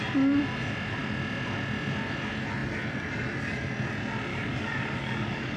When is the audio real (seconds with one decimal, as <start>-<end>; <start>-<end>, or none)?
0.0-4.3